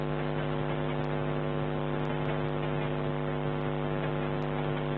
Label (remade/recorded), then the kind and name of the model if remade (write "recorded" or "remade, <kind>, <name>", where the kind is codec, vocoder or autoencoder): recorded